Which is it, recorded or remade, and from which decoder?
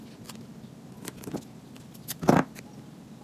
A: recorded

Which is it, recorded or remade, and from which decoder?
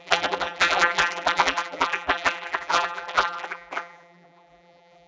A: remade, vocoder, BigVGAN v2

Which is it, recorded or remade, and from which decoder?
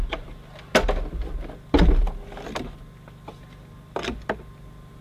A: recorded